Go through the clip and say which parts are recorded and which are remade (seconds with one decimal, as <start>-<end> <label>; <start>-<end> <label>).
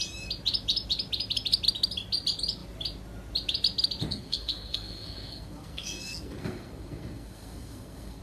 0.0-4.0 recorded; 4.0-8.2 remade